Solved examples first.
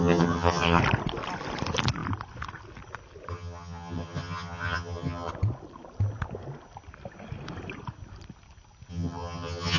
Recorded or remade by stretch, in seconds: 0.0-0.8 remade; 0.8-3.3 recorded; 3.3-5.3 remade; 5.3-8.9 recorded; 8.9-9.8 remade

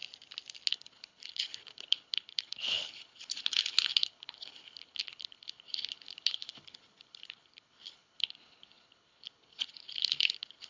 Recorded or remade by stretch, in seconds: 0.0-0.7 recorded; 0.7-10.7 remade

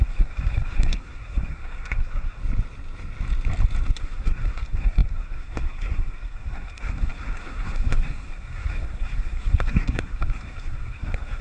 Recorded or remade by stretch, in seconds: 0.0-2.4 remade; 2.4-4.0 recorded; 4.0-11.4 remade

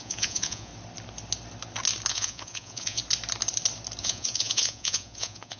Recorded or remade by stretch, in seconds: 0.0-0.7 remade; 0.7-2.1 recorded; 2.1-3.0 remade; 3.0-4.0 recorded; 4.0-5.6 remade

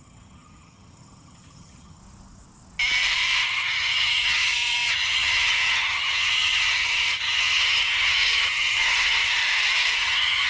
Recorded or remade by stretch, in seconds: 0.0-2.0 remade; 2.0-3.4 recorded; 3.4-9.4 remade; 9.4-10.0 recorded; 10.0-10.5 remade